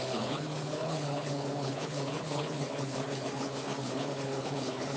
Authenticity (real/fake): fake